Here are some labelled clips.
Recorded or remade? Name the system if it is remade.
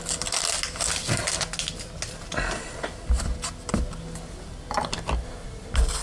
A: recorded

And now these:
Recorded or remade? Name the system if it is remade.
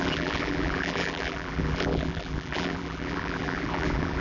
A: remade, vocoder, BigVGAN v2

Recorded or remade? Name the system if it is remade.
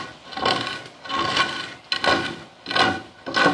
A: recorded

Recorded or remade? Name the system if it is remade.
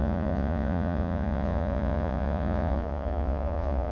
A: remade, vocoder, Vocos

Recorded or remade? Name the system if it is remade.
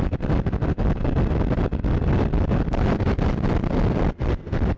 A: recorded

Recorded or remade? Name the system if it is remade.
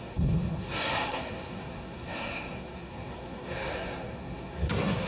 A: remade, codec, SNAC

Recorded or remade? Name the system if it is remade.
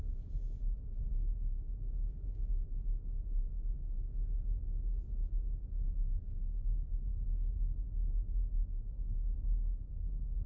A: recorded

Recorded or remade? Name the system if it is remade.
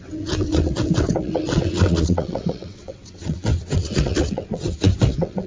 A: remade, vocoder, WaveNeXt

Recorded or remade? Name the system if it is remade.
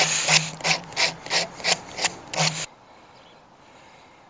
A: recorded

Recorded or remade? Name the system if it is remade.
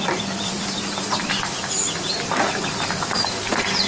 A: remade, vocoder, BigVGAN v2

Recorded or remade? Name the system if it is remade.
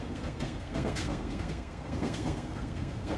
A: remade, codec, SNAC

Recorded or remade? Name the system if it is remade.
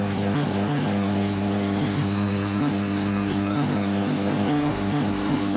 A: remade, codec, SNAC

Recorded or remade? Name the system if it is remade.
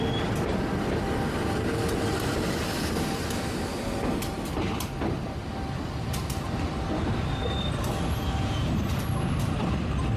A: recorded